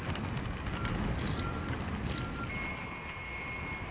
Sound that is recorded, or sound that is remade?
recorded